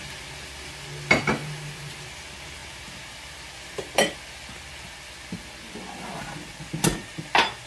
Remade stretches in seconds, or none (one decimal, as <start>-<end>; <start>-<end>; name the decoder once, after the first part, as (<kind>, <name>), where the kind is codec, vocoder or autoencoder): 1.4-2.0 (vocoder, BigVGAN v2)